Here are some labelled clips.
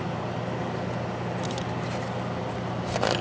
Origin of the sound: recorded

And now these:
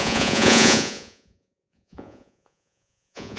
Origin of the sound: remade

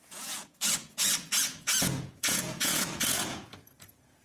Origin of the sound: remade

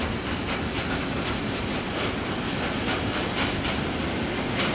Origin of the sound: recorded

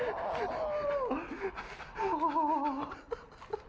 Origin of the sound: recorded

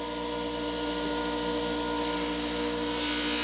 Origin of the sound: recorded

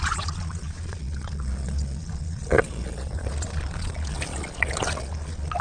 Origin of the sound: remade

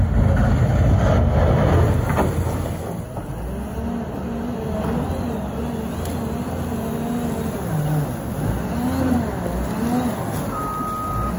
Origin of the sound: recorded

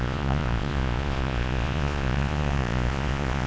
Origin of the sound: remade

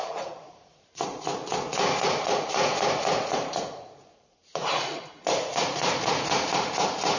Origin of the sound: remade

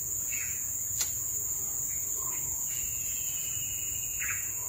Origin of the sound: remade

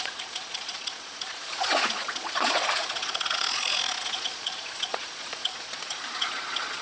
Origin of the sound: remade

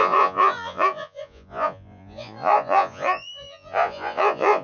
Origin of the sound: remade